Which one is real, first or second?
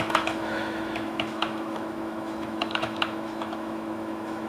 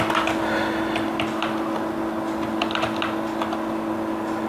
second